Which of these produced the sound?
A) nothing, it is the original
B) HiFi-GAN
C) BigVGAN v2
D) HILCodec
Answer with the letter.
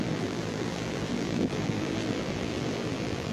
C